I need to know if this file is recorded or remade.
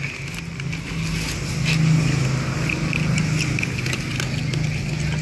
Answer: recorded